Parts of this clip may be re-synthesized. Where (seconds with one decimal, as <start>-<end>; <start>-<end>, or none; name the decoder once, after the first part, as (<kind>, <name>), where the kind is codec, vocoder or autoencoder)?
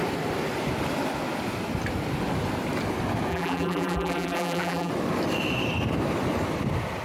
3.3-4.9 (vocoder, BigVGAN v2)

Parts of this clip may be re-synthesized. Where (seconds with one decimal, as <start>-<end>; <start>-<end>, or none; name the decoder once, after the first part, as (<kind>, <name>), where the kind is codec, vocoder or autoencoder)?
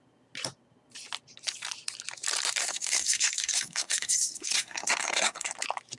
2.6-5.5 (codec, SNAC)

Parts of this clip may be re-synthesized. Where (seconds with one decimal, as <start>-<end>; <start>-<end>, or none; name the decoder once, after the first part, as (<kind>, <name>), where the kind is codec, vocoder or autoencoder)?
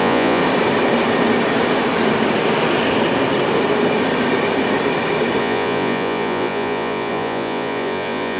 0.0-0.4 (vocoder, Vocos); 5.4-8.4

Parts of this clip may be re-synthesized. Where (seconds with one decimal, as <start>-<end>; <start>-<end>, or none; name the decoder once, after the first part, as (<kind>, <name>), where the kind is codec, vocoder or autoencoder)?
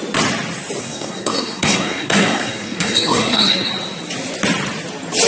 0.8-3.7 (codec, SNAC)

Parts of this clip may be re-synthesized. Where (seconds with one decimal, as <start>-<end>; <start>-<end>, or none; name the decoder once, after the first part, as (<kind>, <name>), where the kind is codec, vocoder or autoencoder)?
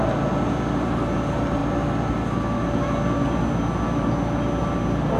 none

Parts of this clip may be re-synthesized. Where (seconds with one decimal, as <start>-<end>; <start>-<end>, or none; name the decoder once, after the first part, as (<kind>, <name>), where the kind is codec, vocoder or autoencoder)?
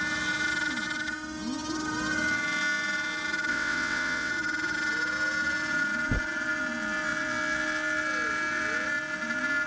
3.5-4.3 (vocoder, WaveNeXt)